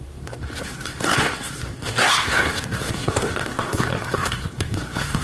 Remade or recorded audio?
remade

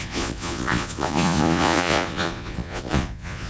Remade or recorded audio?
remade